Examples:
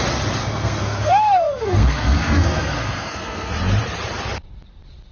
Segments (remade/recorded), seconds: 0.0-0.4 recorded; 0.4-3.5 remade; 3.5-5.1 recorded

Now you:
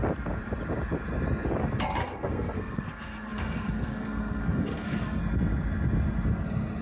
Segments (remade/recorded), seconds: 0.0-2.0 recorded; 2.0-5.2 remade; 5.2-6.8 recorded

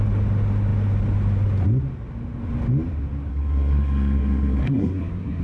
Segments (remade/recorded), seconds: 0.0-3.3 recorded; 3.3-5.4 remade

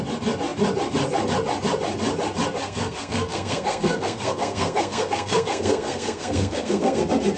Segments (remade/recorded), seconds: 0.0-2.6 recorded; 2.6-7.0 remade; 7.0-7.4 recorded

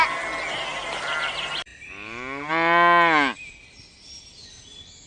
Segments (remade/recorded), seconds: 0.0-5.1 recorded

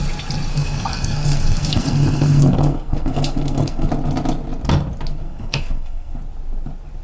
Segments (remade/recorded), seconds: 0.0-0.5 recorded; 0.5-3.9 remade; 3.9-5.1 recorded; 5.1-6.2 remade; 6.2-7.0 recorded